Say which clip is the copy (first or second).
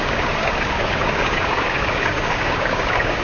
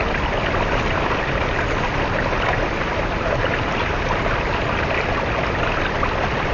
first